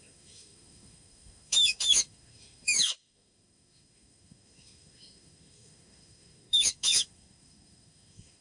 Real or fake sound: fake